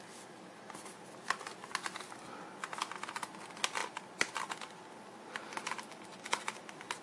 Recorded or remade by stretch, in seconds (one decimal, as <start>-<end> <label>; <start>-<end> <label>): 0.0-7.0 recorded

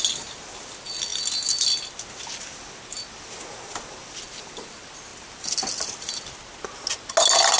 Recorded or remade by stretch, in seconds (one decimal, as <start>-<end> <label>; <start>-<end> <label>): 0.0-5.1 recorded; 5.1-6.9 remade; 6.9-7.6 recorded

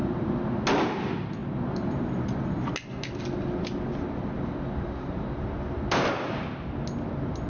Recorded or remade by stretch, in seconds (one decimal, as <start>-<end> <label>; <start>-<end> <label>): 0.0-7.5 recorded

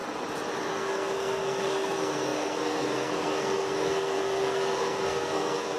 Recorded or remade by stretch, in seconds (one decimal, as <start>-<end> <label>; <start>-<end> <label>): 0.0-0.7 recorded; 0.7-5.8 remade

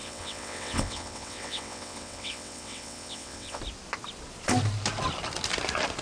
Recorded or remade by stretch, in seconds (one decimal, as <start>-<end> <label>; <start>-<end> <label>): 0.0-3.6 remade; 3.6-6.0 recorded

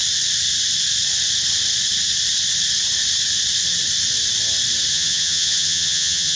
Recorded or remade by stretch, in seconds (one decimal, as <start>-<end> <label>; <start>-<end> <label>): 0.0-4.9 recorded; 4.9-6.4 remade

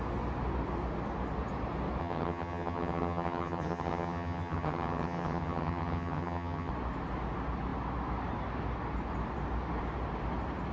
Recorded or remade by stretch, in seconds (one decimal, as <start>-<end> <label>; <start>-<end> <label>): 0.0-2.0 recorded; 2.0-6.7 remade; 6.7-10.7 recorded